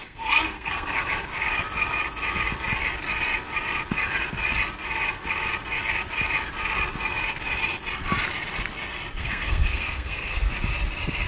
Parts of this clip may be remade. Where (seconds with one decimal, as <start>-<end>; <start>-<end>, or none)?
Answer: 0.0-1.1; 9.2-10.5